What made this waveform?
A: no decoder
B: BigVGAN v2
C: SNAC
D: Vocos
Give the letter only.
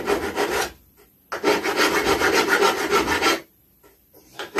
A